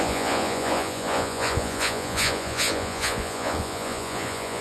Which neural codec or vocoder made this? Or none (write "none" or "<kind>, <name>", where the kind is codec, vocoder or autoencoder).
vocoder, Vocos